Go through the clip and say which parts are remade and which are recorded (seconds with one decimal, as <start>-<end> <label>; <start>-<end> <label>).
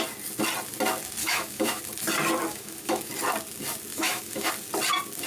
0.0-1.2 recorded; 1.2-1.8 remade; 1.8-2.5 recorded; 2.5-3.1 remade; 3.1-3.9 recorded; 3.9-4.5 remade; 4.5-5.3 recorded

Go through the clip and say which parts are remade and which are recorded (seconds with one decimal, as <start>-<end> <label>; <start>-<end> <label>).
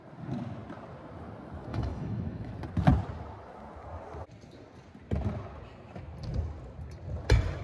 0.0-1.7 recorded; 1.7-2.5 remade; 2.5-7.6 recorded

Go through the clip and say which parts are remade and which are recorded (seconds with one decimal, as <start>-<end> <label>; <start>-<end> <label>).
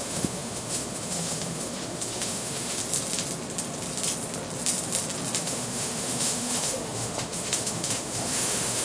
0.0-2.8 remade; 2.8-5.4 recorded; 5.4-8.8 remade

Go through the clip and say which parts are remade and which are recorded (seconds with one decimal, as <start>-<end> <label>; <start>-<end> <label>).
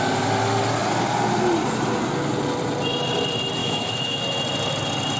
0.0-3.6 recorded; 3.6-4.2 remade; 4.2-5.2 recorded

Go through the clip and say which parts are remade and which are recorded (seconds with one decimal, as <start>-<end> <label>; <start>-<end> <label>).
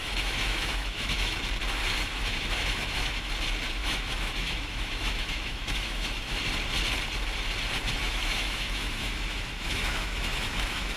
0.0-1.3 remade; 1.3-1.8 recorded; 1.8-3.3 remade; 3.3-3.8 recorded; 3.8-6.4 remade; 6.4-8.0 recorded; 8.0-11.0 remade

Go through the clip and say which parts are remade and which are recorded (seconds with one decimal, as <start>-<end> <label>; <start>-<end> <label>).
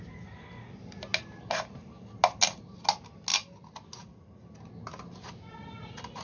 0.0-6.2 recorded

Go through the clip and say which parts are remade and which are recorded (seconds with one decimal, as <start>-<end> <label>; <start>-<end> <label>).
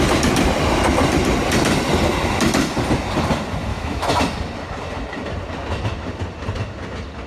0.0-3.7 recorded; 3.7-4.2 remade; 4.2-7.3 recorded